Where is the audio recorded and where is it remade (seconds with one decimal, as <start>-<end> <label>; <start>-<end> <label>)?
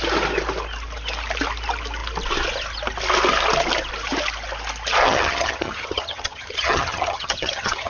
0.0-5.0 recorded; 5.0-7.9 remade